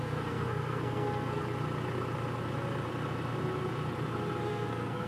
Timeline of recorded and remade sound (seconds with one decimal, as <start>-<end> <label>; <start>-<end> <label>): 0.0-1.4 remade; 1.4-4.5 recorded; 4.5-5.1 remade